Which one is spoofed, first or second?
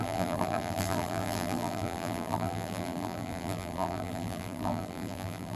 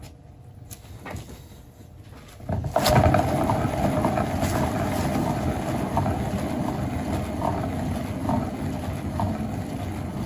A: first